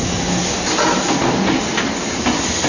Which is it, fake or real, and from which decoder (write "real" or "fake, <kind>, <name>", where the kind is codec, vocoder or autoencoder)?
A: real